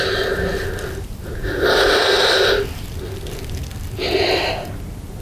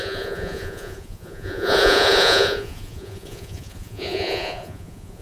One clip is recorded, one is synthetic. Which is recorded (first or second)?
first